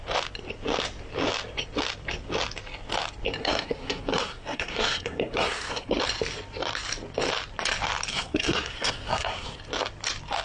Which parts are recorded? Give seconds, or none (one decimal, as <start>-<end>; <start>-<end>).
0.0-3.4; 6.0-8.1; 9.6-10.4